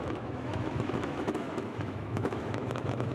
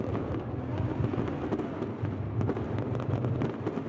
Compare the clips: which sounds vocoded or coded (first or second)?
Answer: first